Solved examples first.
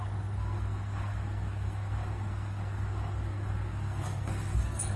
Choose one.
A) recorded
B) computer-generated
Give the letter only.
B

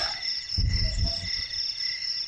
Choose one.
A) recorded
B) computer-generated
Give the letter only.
A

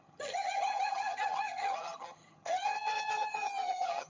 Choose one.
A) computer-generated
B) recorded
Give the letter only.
A